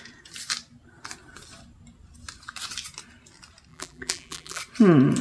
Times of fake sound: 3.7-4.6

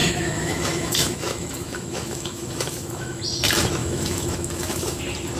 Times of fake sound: 0.0-3.2; 3.8-5.0

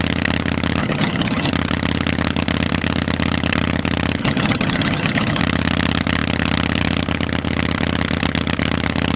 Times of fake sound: 0.8-1.5; 4.2-5.4

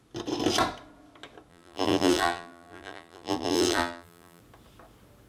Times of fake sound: 1.5-4.4

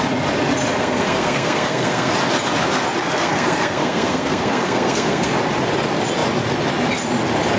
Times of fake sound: 0.8-2.1; 3.0-5.3

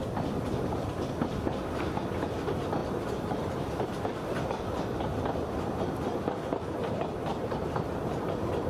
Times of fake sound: 2.8-4.4; 7.3-8.2